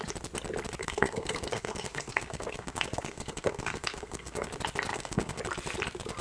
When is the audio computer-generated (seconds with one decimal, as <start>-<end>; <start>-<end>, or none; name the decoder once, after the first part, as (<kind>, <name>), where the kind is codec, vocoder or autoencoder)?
0.8-4.5 (codec, SNAC); 4.9-5.4